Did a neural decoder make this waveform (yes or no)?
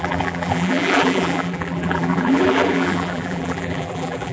yes